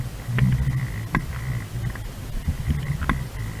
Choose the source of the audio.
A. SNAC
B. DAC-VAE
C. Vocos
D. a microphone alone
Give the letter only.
D